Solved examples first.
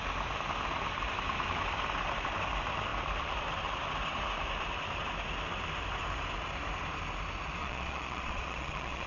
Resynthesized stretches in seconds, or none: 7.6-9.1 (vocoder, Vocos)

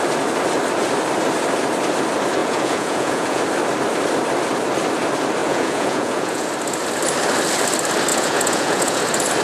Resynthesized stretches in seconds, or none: 2.4-3.4 (vocoder, Vocos); 5.4-6.5; 8.1-9.0

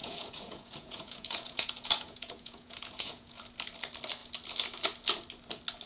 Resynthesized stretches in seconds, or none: 0.0-3.4 (vocoder, Vocos)

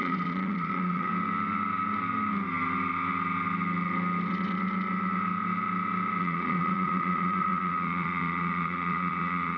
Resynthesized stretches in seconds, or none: 0.0-1.1 (vocoder, Vocos); 6.2-9.6

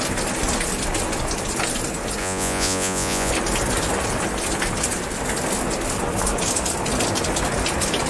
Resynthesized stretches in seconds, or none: 2.2-3.3 (vocoder, Vocos)

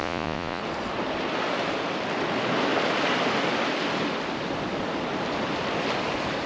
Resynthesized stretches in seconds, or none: 0.0-0.6 (vocoder, Vocos)

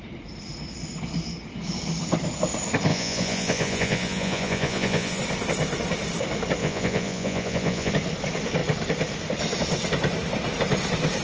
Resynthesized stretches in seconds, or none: 2.9-5.2 (vocoder, Vocos); 6.6-7.9

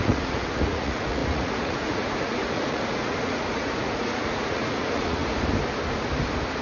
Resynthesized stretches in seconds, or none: 0.0-5.2 (vocoder, Vocos)